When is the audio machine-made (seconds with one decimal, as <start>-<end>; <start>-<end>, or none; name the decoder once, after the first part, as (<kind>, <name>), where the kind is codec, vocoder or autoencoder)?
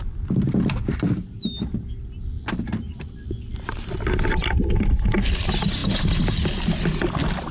none